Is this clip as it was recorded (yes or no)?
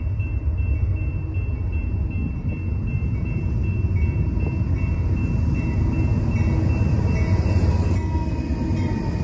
yes